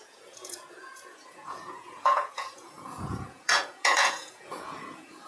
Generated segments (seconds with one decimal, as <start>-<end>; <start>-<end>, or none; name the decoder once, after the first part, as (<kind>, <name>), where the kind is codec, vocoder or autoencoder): 0.0-5.3 (vocoder, Vocos)